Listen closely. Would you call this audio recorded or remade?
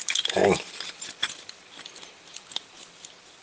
recorded